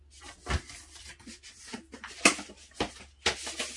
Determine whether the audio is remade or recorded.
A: recorded